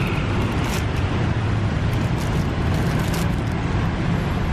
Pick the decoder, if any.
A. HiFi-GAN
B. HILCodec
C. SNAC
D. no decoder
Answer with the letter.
D